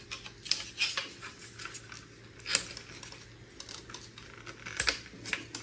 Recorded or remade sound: recorded